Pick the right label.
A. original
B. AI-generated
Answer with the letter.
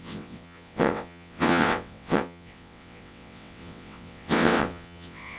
B